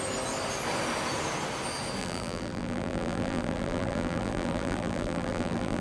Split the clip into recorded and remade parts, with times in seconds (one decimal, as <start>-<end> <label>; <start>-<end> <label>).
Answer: 0.0-2.0 recorded; 2.0-5.8 remade